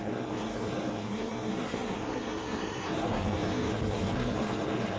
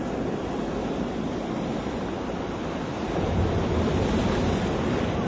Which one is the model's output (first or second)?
first